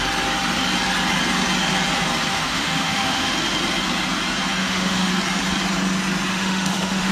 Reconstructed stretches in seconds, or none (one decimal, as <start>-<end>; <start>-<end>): 2.3-3.3; 4.6-5.1; 6.3-7.1